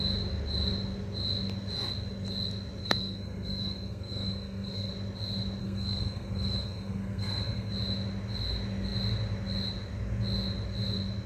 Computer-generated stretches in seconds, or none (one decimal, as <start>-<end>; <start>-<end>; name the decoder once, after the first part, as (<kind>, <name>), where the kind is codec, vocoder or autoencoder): 2.8-4.9 (codec, SNAC); 5.6-7.7